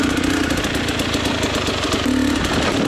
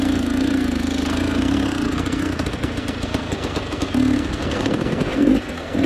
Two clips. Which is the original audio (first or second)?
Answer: first